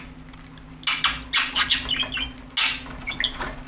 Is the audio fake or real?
real